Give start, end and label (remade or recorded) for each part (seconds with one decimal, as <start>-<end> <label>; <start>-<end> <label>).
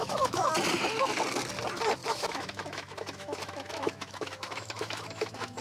0.0-0.5 remade; 0.5-2.0 recorded; 2.0-5.6 remade